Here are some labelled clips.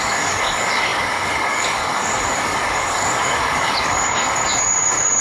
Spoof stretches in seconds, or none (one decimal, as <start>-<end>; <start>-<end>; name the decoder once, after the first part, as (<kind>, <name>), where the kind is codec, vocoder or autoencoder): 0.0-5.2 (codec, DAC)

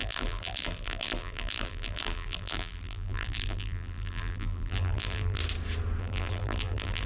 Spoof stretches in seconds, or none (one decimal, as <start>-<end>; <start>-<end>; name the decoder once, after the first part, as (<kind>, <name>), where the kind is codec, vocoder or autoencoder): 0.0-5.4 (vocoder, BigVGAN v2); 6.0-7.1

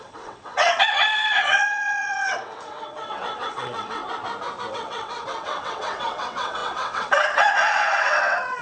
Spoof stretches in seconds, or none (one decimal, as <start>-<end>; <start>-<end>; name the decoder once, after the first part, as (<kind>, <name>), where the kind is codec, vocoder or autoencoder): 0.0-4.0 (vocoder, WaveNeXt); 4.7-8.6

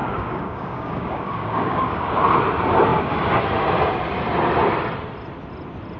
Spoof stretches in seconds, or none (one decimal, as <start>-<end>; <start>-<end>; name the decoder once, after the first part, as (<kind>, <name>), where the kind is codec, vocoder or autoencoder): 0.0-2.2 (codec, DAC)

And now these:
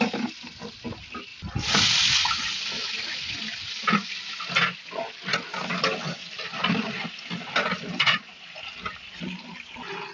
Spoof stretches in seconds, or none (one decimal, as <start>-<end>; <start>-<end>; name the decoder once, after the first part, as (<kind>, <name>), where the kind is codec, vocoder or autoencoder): none